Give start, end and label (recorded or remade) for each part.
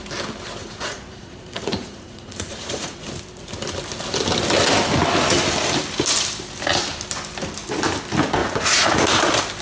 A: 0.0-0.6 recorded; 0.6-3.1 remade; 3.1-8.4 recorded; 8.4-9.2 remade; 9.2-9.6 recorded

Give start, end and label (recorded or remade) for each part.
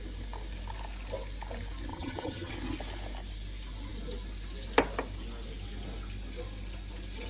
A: 0.0-1.9 recorded; 1.9-2.5 remade; 2.5-7.3 recorded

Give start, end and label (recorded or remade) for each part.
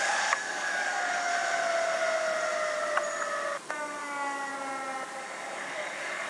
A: 0.0-1.3 remade; 1.3-3.7 recorded; 3.7-4.5 remade; 4.5-5.2 recorded; 5.2-6.3 remade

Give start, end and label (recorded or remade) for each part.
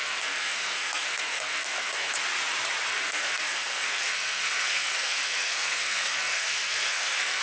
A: 0.0-2.1 remade; 2.1-2.9 recorded; 2.9-7.4 remade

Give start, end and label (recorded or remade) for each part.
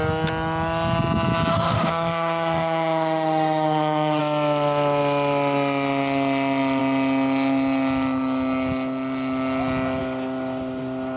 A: 0.0-1.5 recorded; 1.5-4.2 remade; 4.2-11.2 recorded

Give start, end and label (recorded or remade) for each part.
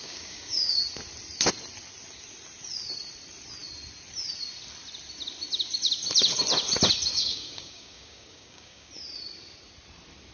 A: 0.0-0.8 remade; 0.8-7.1 recorded; 7.1-8.9 remade; 8.9-10.3 recorded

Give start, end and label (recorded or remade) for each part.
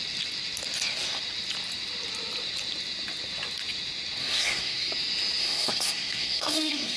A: 0.0-4.2 recorded; 4.2-4.9 remade; 4.9-5.4 recorded; 5.4-7.0 remade